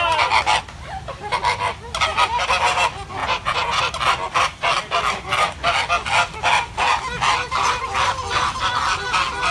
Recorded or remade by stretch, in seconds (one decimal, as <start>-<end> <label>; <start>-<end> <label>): 0.0-3.2 recorded; 3.2-3.8 remade; 3.8-9.5 recorded

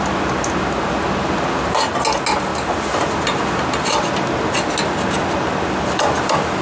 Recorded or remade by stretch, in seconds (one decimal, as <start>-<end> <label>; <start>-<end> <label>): 0.0-0.8 recorded; 0.8-1.9 remade; 1.9-6.6 recorded

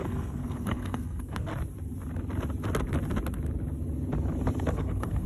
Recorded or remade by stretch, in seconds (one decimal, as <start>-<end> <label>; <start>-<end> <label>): 0.0-1.5 remade; 1.5-4.7 recorded; 4.7-5.3 remade

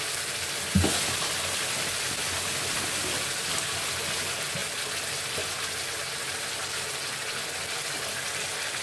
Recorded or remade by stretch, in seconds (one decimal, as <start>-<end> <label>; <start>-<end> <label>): 0.0-8.8 recorded

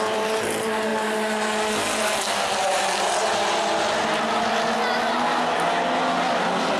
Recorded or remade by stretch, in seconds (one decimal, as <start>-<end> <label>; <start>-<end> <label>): 0.0-6.8 recorded

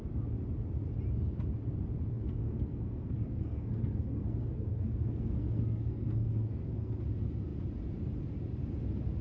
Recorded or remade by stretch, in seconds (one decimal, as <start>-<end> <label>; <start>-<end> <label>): 0.0-2.1 recorded; 2.1-7.0 remade; 7.0-9.2 recorded

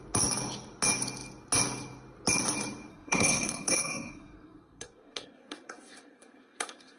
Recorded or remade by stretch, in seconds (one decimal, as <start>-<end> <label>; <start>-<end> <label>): 0.0-2.9 recorded; 2.9-7.0 remade

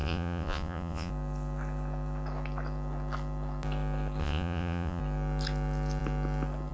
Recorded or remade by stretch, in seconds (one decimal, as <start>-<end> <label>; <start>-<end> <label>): 0.0-1.1 remade; 1.1-4.2 recorded; 4.2-5.0 remade; 5.0-6.7 recorded